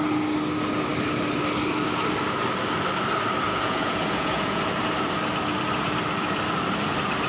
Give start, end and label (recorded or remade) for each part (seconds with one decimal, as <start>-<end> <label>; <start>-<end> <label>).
0.0-3.5 recorded; 3.5-4.6 remade; 4.6-7.3 recorded